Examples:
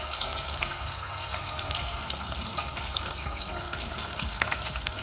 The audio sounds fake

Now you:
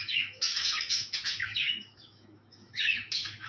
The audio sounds fake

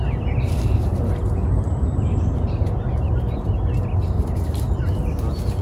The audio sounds real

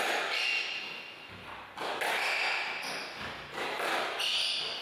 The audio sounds real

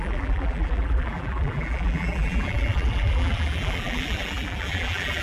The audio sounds fake